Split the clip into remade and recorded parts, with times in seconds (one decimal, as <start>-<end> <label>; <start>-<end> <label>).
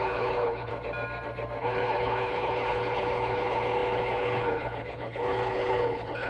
0.0-0.7 remade; 0.7-1.6 recorded; 1.6-6.3 remade